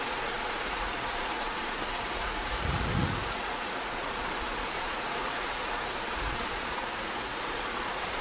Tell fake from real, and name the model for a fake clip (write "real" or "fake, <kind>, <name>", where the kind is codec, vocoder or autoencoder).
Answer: fake, vocoder, Vocos